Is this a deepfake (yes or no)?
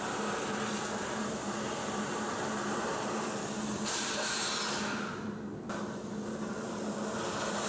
no